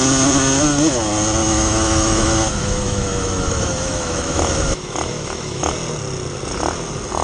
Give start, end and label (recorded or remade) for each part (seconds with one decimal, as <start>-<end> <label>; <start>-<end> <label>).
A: 0.0-1.4 recorded; 1.4-5.7 remade; 5.7-7.2 recorded